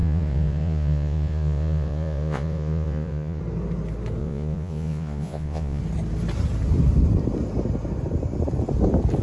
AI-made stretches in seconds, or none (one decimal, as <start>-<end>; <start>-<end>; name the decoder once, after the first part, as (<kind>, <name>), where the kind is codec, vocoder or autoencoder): 0.0-3.4 (vocoder, Vocos); 4.2-5.8